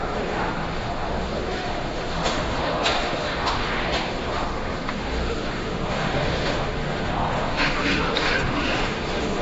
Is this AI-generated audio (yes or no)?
yes